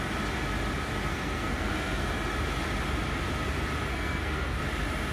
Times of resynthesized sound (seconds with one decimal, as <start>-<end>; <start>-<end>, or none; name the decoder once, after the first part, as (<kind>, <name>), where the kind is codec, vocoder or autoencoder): 1.1-2.1 (codec, SNAC); 3.9-4.6